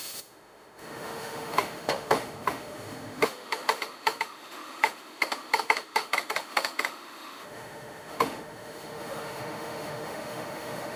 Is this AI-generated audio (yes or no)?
yes